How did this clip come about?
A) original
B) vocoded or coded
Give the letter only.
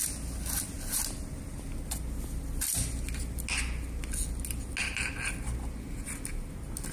A